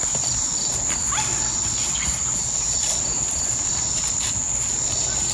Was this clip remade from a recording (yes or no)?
no